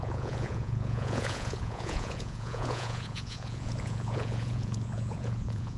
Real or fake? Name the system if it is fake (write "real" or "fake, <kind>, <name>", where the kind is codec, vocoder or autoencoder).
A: fake, vocoder, Vocos